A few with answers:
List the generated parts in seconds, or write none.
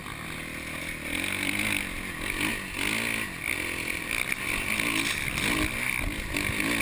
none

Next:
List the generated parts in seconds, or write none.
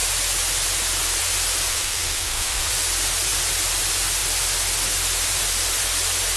1.7-2.7 (codec, SNAC)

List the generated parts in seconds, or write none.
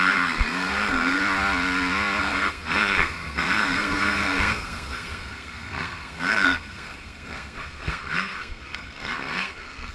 0.0-1.2 (codec, SNAC); 2.2-9.9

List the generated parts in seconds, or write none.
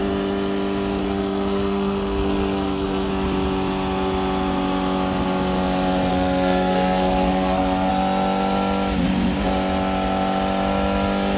1.0-3.1 (codec, SNAC); 6.1-7.9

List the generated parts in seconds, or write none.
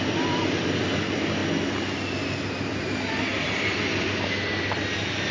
none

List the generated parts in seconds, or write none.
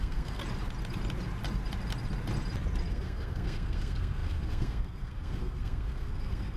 0.0-0.4 (codec, SNAC); 2.9-6.6